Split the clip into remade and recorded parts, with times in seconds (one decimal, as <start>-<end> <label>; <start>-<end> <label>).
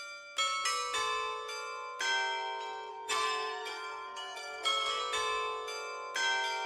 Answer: 0.0-2.9 recorded; 2.9-5.0 remade; 5.0-6.7 recorded